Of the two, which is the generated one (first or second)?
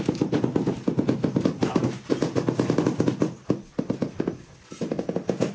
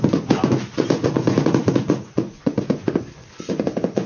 second